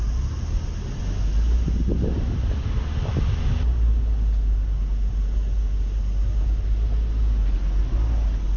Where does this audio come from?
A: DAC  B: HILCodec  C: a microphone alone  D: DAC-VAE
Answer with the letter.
C